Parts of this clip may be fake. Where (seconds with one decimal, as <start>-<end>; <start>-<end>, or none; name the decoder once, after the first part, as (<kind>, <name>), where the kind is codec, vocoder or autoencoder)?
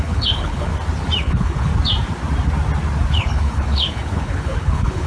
0.0-0.7 (codec, HILCodec); 1.2-1.7; 3.1-5.1